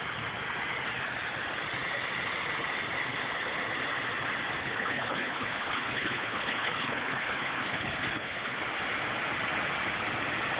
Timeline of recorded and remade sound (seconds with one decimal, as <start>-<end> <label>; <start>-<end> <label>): 0.0-4.6 recorded; 4.6-8.6 remade; 8.6-10.6 recorded